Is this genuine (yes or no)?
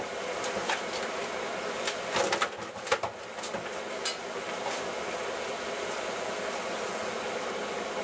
yes